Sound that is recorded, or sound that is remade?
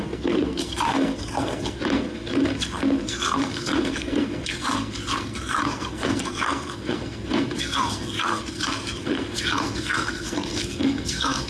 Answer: remade